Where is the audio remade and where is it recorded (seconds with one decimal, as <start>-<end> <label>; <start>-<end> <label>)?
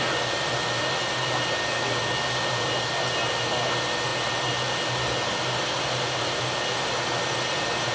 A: 0.0-7.9 recorded